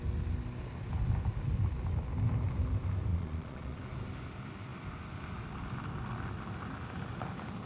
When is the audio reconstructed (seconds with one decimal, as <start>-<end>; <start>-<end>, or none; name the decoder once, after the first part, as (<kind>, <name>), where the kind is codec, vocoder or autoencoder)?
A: 3.1-3.8 (vocoder, Vocos)